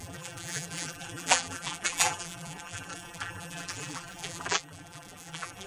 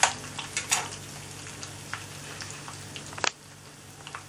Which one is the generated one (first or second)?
first